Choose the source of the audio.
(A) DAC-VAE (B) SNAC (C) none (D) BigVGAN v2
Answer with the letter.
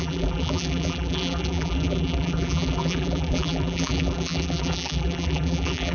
D